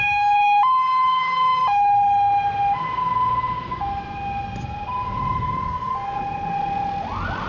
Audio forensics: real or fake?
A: real